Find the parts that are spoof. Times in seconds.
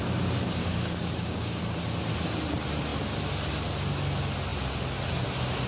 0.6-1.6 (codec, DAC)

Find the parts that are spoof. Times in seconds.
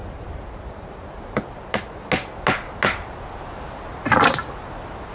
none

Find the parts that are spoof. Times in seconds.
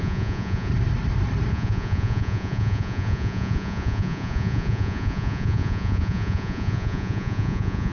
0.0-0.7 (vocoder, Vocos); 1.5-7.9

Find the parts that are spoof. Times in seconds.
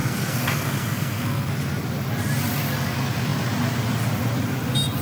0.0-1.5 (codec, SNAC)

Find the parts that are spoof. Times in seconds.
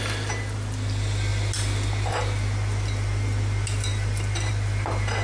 3.9-4.5 (vocoder, BigVGAN v2)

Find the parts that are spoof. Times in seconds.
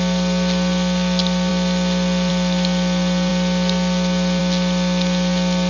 none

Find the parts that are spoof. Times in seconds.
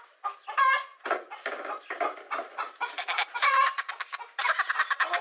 0.9-3.9 (vocoder, BigVGAN v2)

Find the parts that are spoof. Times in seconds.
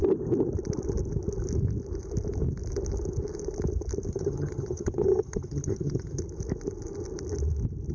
4.1-6.2 (vocoder, HiFi-GAN)